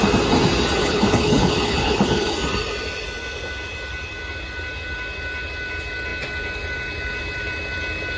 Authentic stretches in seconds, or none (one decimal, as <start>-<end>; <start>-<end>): 0.0-0.8; 2.3-8.2